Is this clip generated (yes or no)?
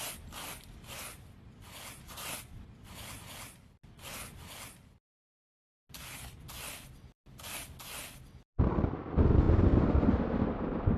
no